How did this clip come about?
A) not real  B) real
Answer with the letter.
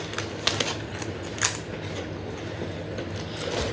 B